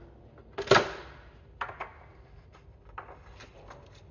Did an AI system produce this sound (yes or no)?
no